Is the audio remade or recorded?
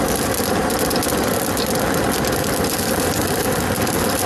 recorded